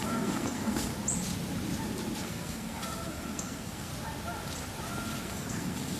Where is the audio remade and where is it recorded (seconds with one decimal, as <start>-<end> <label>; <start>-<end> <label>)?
0.0-0.9 remade; 0.9-2.2 recorded; 2.2-3.9 remade; 3.9-5.2 recorded; 5.2-6.0 remade